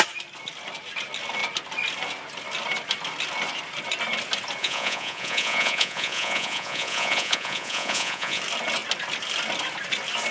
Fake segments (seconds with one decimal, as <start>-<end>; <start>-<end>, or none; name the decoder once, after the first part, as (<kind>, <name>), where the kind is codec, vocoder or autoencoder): 4.6-8.4 (vocoder, Vocos)